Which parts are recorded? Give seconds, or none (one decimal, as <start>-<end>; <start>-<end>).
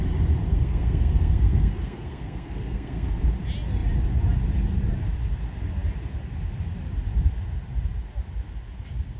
0.0-0.5; 3.1-9.2